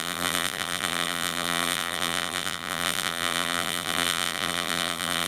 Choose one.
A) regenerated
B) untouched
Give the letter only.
A